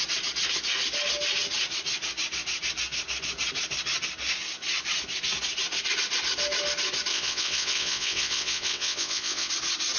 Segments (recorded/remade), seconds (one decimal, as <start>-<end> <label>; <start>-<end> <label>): 0.0-7.1 recorded; 7.1-9.5 remade; 9.5-10.0 recorded

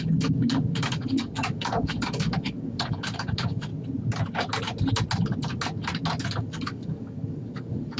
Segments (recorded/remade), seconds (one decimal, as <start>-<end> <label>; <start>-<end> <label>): 0.0-3.7 remade; 3.7-6.4 recorded; 6.4-8.0 remade